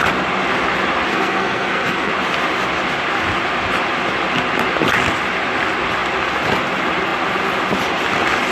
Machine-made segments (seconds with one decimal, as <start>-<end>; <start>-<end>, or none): 1.1-2.1